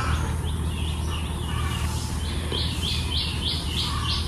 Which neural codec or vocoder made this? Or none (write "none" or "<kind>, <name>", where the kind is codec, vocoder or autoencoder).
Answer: none